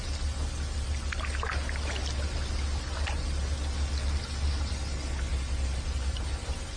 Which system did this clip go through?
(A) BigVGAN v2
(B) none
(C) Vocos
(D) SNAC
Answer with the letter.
B